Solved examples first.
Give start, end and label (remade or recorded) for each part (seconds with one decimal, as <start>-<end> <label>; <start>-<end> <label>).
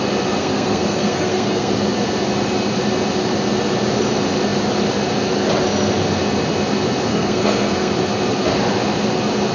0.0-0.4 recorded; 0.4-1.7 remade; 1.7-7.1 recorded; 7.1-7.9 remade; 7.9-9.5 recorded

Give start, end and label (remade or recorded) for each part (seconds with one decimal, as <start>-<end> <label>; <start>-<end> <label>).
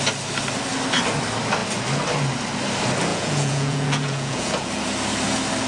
0.0-3.1 recorded; 3.1-4.7 remade; 4.7-5.7 recorded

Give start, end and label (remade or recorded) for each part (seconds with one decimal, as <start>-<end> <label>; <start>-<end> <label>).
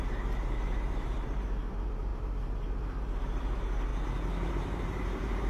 0.0-3.9 remade; 3.9-4.5 recorded; 4.5-5.5 remade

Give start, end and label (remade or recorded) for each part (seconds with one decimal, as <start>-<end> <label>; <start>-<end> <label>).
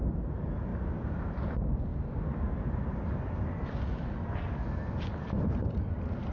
0.0-6.3 recorded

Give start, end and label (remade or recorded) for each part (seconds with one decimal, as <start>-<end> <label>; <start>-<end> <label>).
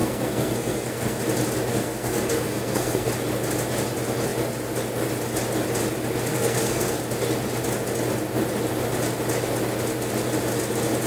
0.0-1.2 remade; 1.2-1.7 recorded; 1.7-3.1 remade; 3.1-6.3 recorded; 6.3-7.0 remade; 7.0-11.1 recorded